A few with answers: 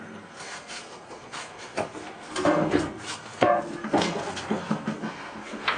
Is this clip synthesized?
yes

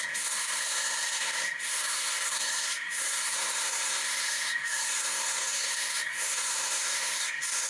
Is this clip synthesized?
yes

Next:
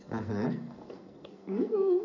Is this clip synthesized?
yes